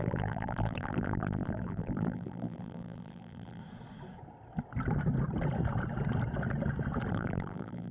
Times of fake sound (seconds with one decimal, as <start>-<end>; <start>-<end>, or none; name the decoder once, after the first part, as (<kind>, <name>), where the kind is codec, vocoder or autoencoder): 0.0-3.6 (vocoder, BigVGAN v2); 7.1-7.9

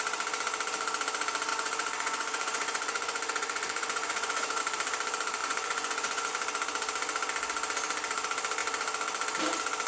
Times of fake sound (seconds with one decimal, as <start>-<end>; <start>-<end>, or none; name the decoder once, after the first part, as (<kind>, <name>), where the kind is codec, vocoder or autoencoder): 1.5-4.6 (vocoder, Vocos); 5.4-6.3

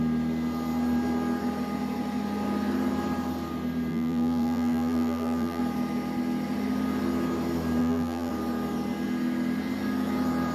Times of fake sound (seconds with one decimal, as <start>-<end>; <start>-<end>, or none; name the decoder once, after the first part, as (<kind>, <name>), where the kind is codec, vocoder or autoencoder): 3.9-5.6 (vocoder, BigVGAN v2); 7.8-8.3

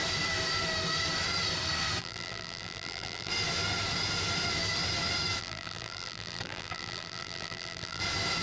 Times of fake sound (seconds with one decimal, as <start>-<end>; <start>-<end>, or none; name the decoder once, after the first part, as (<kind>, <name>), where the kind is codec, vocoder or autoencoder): 2.0-3.3 (vocoder, BigVGAN v2); 5.4-8.0